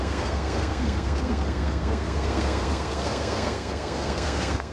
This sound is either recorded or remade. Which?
remade